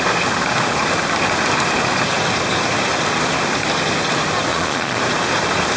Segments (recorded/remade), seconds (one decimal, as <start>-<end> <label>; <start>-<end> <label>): 0.0-4.5 recorded; 4.5-5.0 remade; 5.0-5.8 recorded